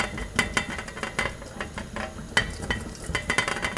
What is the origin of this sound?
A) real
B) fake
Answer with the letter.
A